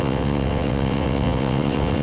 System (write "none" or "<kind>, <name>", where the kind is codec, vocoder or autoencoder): vocoder, WaveNeXt